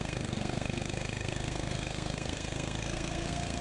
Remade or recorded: remade